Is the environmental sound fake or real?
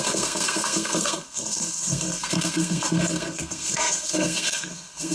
fake